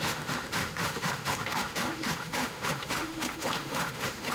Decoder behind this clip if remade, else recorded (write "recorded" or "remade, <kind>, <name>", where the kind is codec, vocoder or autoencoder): remade, autoencoder, DAC-VAE